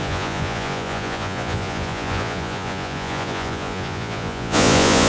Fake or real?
fake